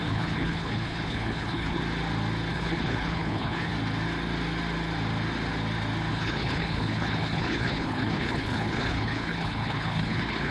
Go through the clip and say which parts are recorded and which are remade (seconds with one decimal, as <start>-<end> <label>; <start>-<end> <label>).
0.0-1.8 remade; 1.8-2.5 recorded; 2.5-3.7 remade; 3.7-6.1 recorded; 6.1-10.5 remade